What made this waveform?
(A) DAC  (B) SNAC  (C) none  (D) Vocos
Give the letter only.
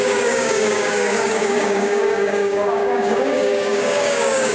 A